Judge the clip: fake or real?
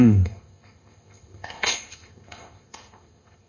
fake